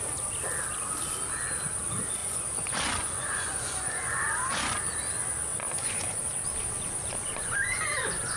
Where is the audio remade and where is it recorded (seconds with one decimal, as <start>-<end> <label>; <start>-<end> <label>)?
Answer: 0.0-2.2 recorded; 2.2-4.8 remade; 4.8-5.5 recorded; 5.5-6.2 remade; 6.2-7.0 recorded; 7.0-8.4 remade